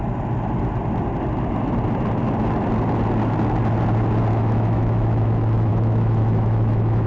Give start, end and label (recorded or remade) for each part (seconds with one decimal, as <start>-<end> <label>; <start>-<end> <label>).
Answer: 0.0-4.3 recorded; 4.3-7.1 remade